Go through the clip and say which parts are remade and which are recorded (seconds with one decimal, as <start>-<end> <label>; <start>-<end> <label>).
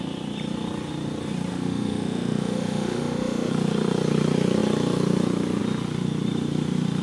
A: 0.0-1.5 recorded; 1.5-3.5 remade; 3.5-7.0 recorded